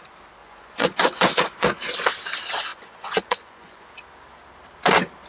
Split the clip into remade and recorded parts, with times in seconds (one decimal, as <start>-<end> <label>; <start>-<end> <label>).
0.0-0.4 recorded; 0.4-1.8 remade; 1.8-2.7 recorded; 2.7-3.9 remade; 3.9-5.3 recorded